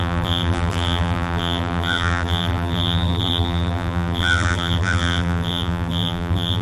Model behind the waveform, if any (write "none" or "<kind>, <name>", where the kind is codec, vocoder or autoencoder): vocoder, BigVGAN v2